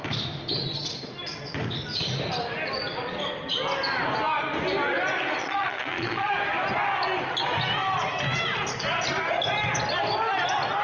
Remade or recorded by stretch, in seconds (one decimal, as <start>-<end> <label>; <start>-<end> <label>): 0.0-5.4 recorded; 5.4-6.3 remade; 6.3-10.8 recorded